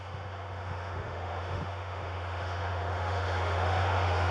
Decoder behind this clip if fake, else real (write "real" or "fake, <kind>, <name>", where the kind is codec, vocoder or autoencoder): fake, autoencoder, DAC-VAE